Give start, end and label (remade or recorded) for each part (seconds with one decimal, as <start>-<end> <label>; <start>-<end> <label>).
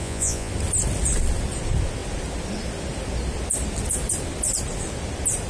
0.0-0.5 remade; 0.5-5.5 recorded